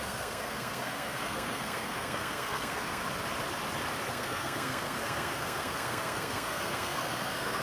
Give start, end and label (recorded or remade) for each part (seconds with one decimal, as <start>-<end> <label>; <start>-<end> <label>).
0.0-3.0 remade; 3.0-4.1 recorded; 4.1-7.6 remade